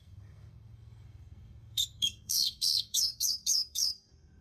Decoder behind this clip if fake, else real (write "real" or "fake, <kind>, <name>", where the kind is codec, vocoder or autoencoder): fake, codec, SNAC